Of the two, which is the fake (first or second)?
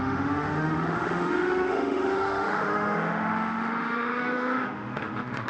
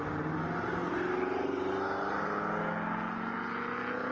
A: first